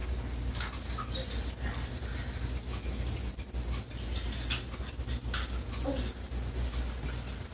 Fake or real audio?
real